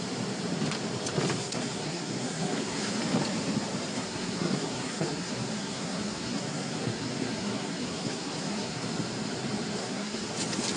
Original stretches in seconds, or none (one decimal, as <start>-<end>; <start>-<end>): 0.0-1.4; 3.0-3.9; 8.9-9.8; 10.3-10.8